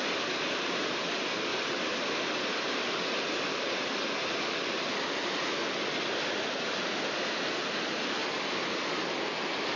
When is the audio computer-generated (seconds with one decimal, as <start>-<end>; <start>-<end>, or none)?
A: none